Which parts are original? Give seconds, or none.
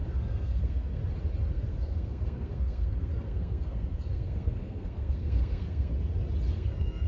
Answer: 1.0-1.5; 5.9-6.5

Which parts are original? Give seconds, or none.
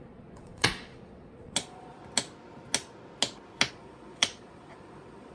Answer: 2.0-3.7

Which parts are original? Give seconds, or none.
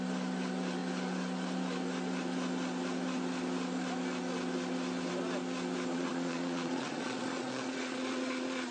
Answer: 0.0-5.9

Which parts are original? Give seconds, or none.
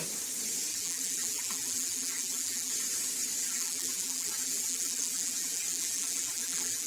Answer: 0.0-0.7; 2.7-3.4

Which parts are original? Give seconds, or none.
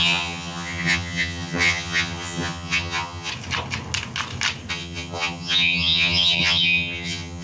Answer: 3.3-4.7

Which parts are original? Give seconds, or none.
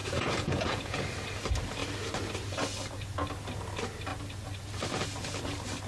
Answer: 1.0-5.9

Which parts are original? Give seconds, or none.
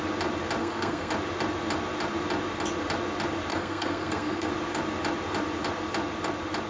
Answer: 0.0-0.6; 1.1-3.5; 4.5-6.7